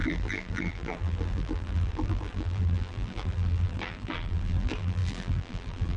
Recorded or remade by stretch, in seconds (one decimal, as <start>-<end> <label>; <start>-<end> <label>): 0.0-6.0 remade